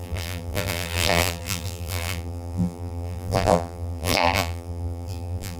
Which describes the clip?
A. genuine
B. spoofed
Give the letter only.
B